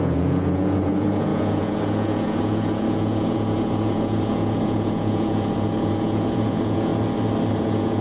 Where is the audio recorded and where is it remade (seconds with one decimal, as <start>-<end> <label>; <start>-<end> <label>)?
0.0-6.9 remade; 6.9-7.5 recorded; 7.5-8.0 remade